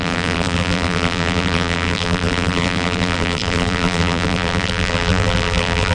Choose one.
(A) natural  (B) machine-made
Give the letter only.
B